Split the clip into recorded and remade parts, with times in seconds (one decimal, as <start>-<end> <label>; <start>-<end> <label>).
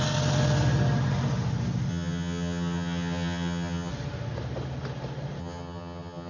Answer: 0.0-1.9 recorded; 1.9-3.9 remade; 3.9-5.4 recorded; 5.4-6.3 remade